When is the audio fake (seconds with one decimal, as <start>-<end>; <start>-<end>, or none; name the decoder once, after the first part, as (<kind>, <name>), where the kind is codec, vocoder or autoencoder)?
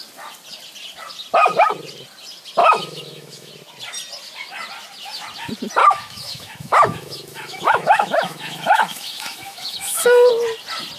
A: 2.6-3.5 (autoencoder, DAC-VAE); 5.8-10.3